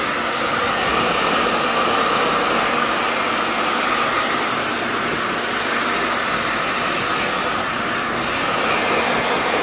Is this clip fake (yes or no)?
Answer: no